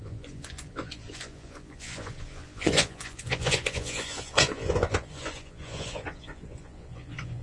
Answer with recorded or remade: remade